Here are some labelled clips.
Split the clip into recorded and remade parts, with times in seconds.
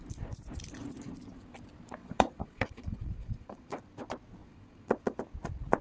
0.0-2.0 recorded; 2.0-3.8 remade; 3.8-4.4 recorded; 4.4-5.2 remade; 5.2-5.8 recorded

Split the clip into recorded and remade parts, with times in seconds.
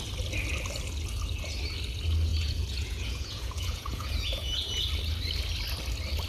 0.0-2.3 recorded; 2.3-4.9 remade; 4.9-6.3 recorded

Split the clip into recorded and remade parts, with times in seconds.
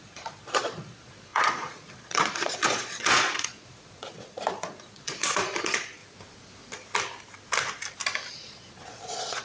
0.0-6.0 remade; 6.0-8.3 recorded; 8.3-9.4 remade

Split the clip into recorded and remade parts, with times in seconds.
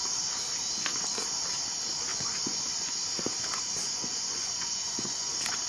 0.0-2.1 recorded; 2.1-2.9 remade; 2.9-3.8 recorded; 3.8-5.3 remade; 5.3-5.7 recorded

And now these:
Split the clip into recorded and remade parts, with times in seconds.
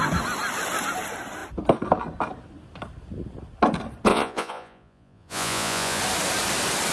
0.0-4.1 recorded; 4.1-6.0 remade; 6.0-6.9 recorded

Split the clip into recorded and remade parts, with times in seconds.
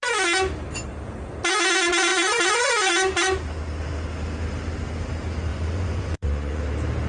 0.0-2.1 recorded; 2.1-2.7 remade; 2.7-5.5 recorded; 5.5-6.6 remade; 6.6-7.1 recorded